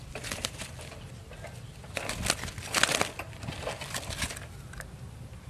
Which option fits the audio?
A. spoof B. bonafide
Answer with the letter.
B